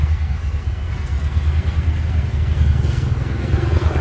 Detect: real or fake fake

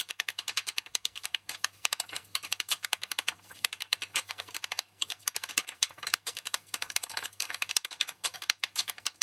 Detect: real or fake fake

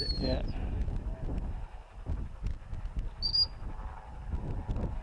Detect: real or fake real